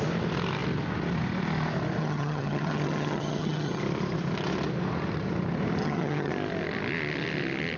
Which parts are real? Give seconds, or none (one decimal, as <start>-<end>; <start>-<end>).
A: 0.0-2.0; 3.8-5.8; 6.3-7.8